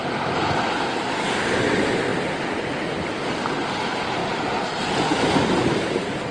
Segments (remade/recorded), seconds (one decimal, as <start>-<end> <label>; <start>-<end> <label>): 0.0-4.2 recorded; 4.2-6.3 remade